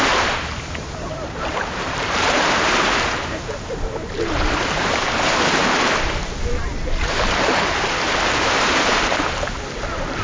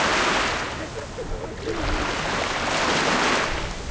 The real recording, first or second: second